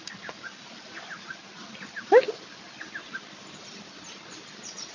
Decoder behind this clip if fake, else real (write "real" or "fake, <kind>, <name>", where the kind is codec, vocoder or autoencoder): real